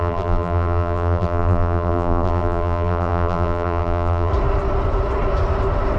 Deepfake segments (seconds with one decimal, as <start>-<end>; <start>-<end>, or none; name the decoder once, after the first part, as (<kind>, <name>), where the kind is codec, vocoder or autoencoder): 0.0-4.3 (vocoder, BigVGAN v2)